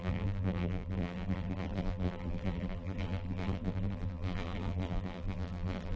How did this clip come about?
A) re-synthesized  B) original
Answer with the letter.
A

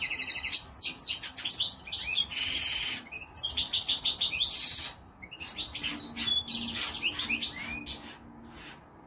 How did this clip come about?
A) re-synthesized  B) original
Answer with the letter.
B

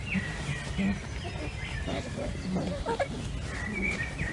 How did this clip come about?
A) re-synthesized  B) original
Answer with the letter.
B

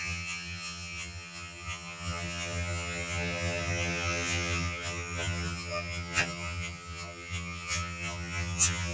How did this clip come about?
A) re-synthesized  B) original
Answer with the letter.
A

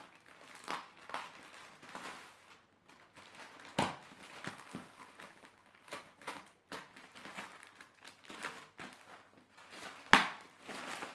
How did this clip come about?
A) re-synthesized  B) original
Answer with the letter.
B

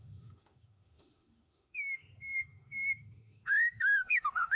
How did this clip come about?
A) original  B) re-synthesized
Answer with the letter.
B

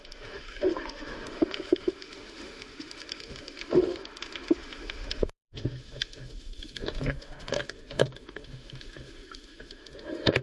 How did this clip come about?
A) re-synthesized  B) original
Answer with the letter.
A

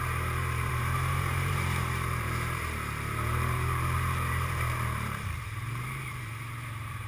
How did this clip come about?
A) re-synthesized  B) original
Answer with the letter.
A